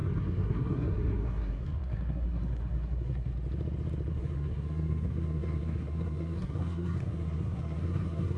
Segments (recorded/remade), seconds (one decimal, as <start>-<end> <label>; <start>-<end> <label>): 0.0-3.3 remade; 3.3-4.1 recorded; 4.1-8.4 remade